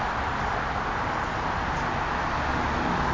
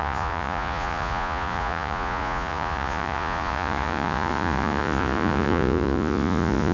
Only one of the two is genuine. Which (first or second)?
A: first